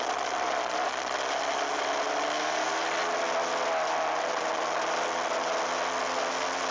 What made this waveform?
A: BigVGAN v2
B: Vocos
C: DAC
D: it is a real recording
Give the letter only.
D